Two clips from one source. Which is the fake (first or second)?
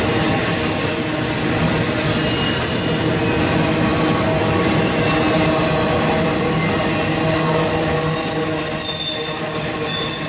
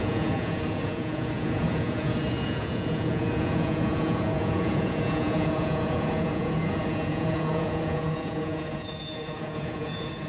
second